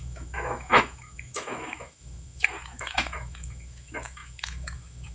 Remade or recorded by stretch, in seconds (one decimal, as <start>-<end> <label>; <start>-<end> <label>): 0.0-5.1 remade